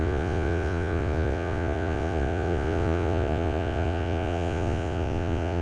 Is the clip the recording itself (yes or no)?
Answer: no